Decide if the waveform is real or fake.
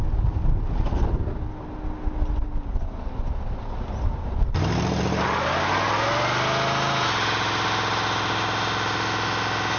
real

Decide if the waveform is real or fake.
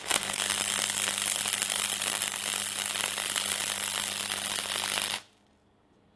real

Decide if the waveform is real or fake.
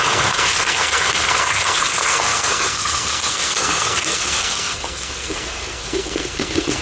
fake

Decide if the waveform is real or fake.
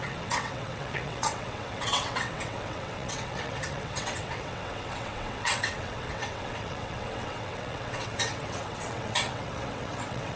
fake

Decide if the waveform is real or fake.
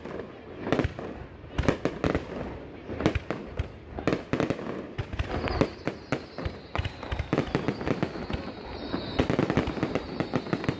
real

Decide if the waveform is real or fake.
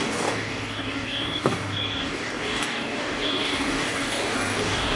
fake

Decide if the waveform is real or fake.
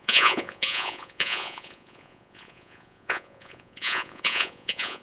fake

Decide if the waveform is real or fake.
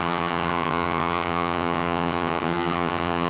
fake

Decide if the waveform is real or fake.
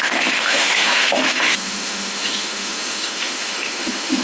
fake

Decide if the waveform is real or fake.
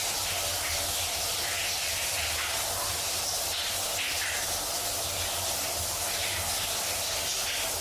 real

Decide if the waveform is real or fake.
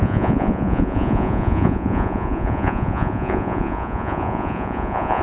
fake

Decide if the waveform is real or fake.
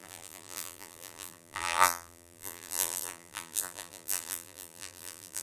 fake